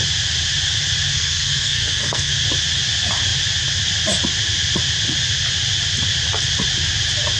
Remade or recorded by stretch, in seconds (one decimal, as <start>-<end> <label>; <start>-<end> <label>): 0.0-1.1 recorded; 1.1-2.3 remade; 2.3-7.4 recorded